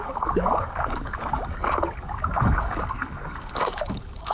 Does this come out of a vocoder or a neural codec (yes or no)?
yes